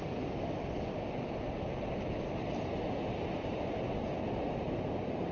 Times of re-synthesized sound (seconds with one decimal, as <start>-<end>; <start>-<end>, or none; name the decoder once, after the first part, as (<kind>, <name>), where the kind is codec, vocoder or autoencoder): 3.4-5.3 (vocoder, BigVGAN v2)